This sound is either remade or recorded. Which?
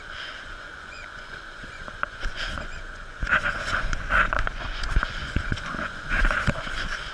remade